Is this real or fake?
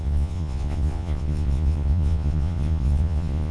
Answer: fake